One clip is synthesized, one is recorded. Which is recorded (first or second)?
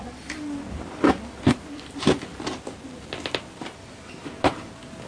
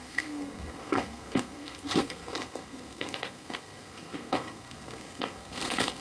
first